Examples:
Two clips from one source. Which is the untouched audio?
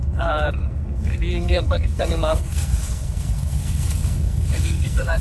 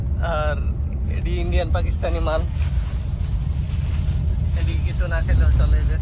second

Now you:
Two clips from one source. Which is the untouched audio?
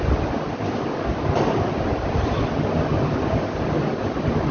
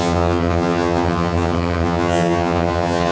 first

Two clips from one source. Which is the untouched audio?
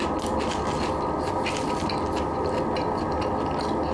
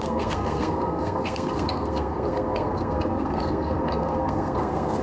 first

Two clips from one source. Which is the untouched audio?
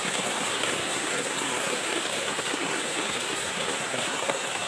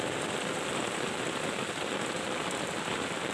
second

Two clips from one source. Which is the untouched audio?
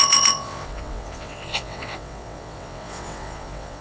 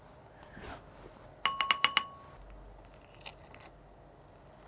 second